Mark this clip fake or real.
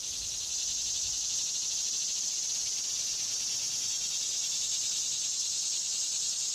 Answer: real